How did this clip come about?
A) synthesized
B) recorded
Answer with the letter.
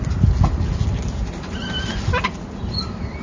B